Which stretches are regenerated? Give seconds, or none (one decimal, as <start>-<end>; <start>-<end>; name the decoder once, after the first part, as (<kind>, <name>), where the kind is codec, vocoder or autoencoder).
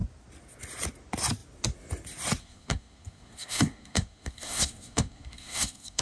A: 2.4-6.0 (codec, SNAC)